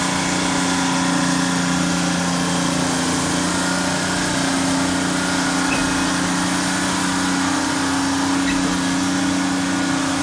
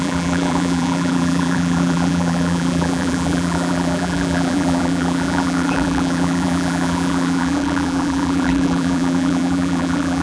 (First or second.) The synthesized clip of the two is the second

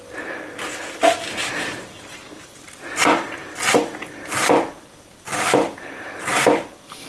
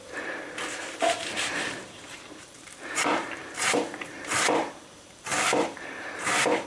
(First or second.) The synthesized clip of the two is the second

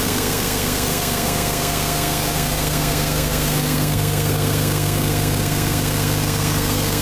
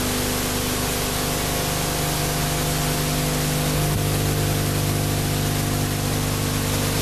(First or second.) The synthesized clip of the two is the first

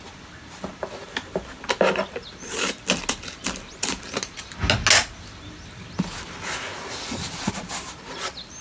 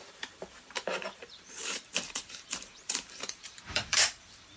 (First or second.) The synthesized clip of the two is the second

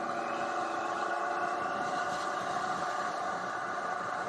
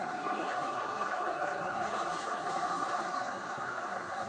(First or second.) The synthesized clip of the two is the second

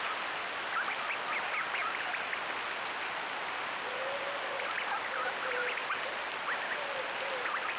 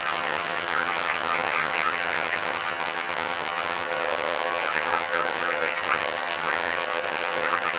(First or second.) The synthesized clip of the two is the second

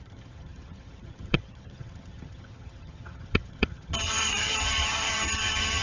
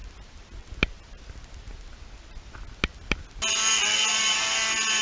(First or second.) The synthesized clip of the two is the first